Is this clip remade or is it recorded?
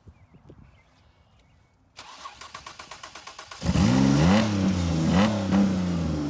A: recorded